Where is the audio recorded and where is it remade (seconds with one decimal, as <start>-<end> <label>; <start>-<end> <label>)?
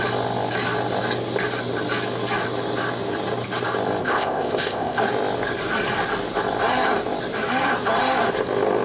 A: 0.0-4.0 recorded; 4.0-5.0 remade; 5.0-8.8 recorded